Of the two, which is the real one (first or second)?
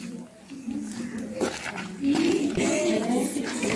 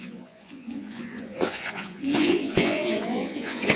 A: first